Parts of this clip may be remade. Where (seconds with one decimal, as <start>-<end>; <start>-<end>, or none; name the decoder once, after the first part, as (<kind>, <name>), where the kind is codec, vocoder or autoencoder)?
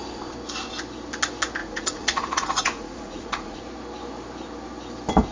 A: 1.6-3.6 (vocoder, Vocos)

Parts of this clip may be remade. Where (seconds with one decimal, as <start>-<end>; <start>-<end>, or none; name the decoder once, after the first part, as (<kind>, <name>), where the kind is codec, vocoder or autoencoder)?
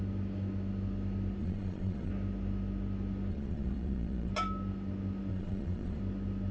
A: 1.4-2.1 (vocoder, Vocos); 3.3-4.3; 5.3-6.0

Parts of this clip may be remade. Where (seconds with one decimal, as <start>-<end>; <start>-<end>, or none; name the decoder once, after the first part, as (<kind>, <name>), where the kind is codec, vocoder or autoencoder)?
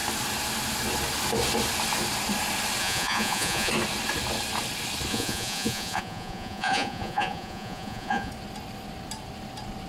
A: 2.8-3.7 (vocoder, Vocos); 5.1-8.3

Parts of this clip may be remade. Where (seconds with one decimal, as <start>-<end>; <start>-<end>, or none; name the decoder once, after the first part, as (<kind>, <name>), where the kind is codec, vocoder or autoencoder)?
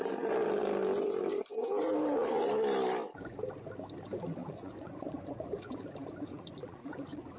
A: 4.4-5.5 (vocoder, Vocos); 6.3-7.4